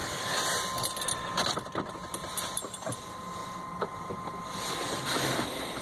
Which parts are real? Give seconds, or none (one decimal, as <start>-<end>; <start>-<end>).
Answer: 0.0-3.4; 4.7-5.8